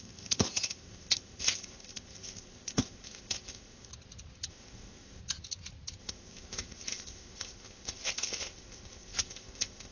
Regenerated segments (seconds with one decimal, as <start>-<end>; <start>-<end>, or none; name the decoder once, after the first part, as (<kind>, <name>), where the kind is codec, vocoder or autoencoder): 0.0-3.9 (codec, ZipCodec); 4.5-5.2; 6.0-9.9